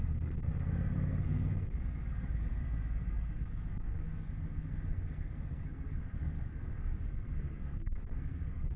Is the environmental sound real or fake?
fake